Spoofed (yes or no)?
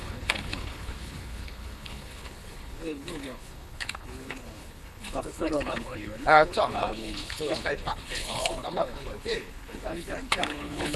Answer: yes